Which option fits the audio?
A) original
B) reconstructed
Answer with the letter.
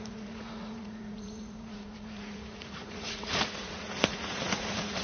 B